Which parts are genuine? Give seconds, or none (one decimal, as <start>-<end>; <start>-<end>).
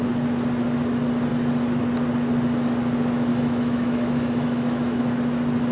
0.0-3.3; 5.0-5.7